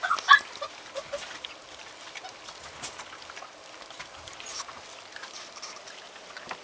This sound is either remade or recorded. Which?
recorded